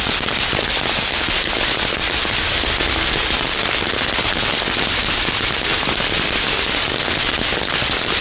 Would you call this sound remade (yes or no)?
no